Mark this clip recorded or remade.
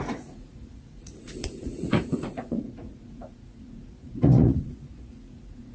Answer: remade